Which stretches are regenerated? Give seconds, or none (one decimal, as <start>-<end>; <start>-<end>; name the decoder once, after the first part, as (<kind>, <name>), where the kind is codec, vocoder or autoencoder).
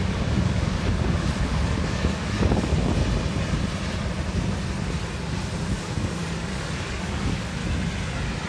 0.0-2.7 (codec, DAC); 5.7-7.6